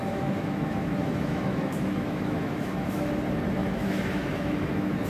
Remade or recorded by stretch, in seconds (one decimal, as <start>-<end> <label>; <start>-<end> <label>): 0.0-3.1 remade; 3.1-3.6 recorded; 3.6-5.1 remade